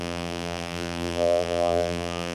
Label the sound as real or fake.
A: fake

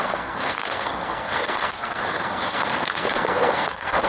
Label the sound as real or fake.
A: fake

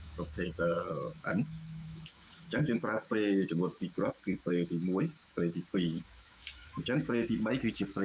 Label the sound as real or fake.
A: fake